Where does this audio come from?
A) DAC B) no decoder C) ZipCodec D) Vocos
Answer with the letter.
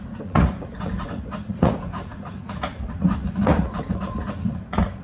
D